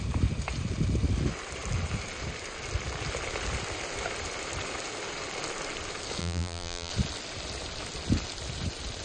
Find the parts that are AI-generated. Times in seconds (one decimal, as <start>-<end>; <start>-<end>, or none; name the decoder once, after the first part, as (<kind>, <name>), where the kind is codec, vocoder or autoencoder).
6.2-6.9 (vocoder, BigVGAN v2)